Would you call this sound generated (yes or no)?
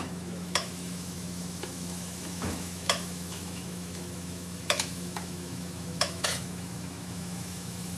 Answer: yes